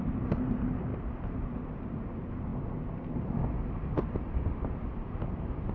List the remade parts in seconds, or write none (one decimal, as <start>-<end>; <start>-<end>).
none